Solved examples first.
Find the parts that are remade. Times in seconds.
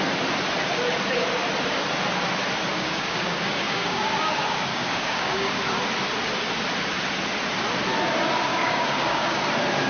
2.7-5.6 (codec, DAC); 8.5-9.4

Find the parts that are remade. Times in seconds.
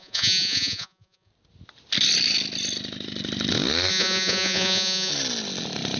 0.0-1.3 (vocoder, Vocos); 3.9-5.1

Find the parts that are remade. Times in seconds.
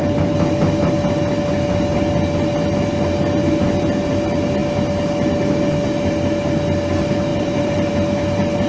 7.3-7.9 (vocoder, BigVGAN v2)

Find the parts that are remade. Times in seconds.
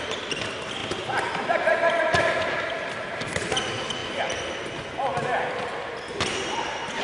0.8-3.6 (vocoder, BigVGAN v2)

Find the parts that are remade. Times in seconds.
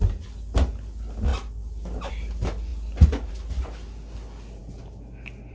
none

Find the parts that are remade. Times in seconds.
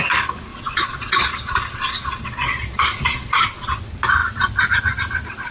0.5-3.8 (vocoder, Vocos)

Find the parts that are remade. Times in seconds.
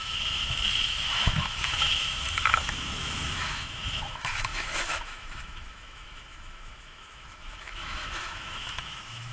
0.0-9.3 (autoencoder, DAC-VAE)